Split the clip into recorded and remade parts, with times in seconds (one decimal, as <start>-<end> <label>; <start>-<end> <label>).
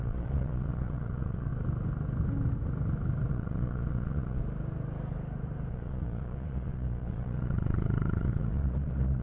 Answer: 0.0-1.5 remade; 1.5-3.3 recorded; 3.3-4.4 remade; 4.4-5.7 recorded; 5.7-9.2 remade